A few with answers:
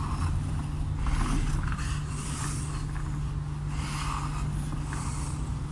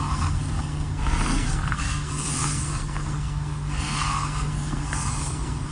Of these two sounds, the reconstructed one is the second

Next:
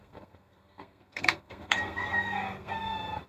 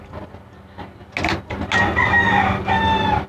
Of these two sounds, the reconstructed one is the first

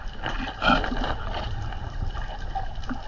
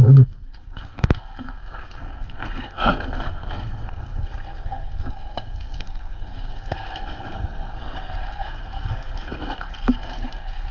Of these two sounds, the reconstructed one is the second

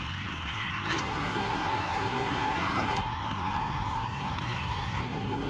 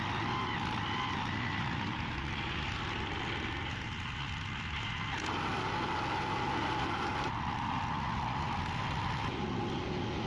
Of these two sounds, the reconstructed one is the first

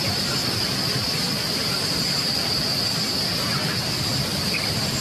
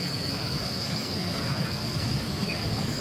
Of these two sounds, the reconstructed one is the second